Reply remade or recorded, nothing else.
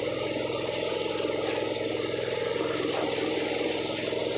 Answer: recorded